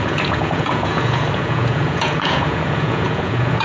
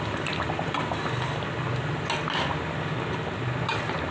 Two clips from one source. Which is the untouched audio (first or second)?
second